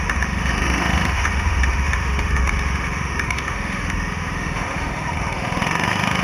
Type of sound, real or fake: fake